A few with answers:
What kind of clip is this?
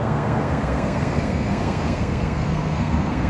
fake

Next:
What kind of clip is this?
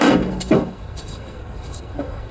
fake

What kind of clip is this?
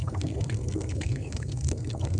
fake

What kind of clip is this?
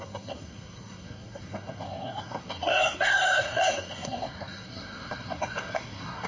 fake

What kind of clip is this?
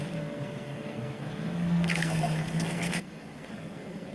fake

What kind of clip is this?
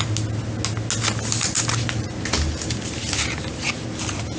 real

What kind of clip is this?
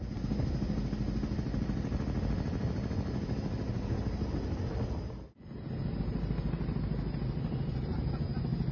real